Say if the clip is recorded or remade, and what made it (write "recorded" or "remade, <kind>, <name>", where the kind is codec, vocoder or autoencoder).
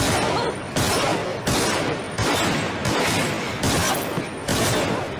remade, vocoder, BigVGAN v2